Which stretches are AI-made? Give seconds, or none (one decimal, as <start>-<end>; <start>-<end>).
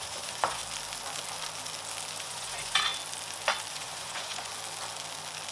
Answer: 0.0-0.6; 2.2-2.9; 3.7-4.5